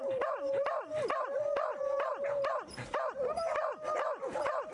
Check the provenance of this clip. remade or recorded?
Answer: recorded